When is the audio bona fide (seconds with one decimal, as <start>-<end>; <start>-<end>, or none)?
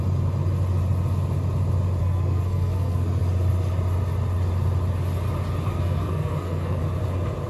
0.0-2.0; 3.2-5.7; 6.8-7.5